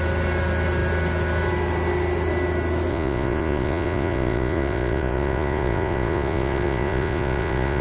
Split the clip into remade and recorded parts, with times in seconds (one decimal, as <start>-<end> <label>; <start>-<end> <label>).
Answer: 0.0-2.9 recorded; 2.9-7.8 remade